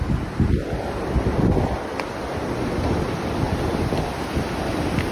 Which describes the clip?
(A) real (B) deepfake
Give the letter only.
A